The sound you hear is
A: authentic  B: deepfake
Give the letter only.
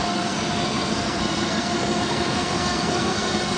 B